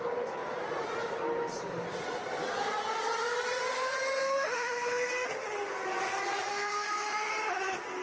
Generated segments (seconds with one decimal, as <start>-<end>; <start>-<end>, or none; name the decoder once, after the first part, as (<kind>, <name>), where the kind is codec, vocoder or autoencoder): 4.2-5.1 (autoencoder, DAC-VAE); 6.5-7.3